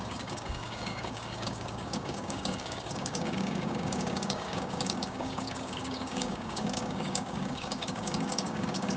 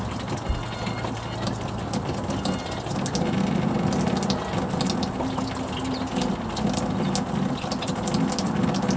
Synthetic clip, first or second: first